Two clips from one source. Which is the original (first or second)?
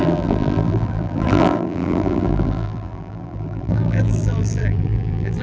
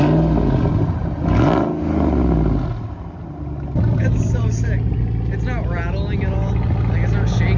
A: second